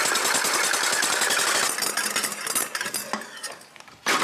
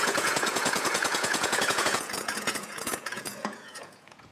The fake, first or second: second